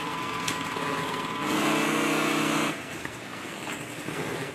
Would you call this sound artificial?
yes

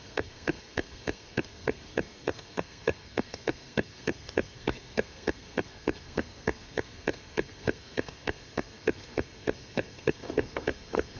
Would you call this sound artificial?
yes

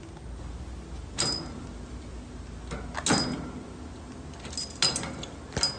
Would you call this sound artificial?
no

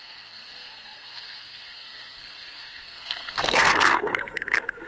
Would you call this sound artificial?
yes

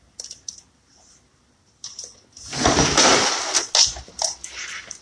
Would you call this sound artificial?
no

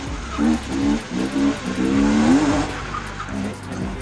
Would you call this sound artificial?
no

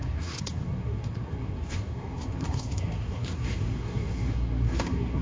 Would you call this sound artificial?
yes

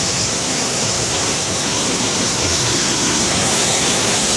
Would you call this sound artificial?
yes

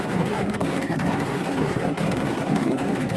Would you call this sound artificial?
yes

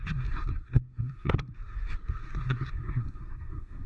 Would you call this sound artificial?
yes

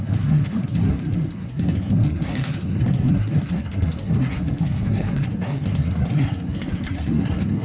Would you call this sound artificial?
yes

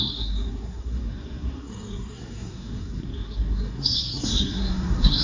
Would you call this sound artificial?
yes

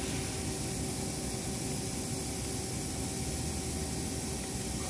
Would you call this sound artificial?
no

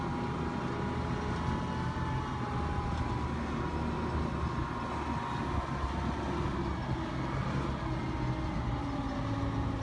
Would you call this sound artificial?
no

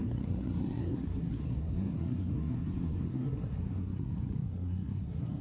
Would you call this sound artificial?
yes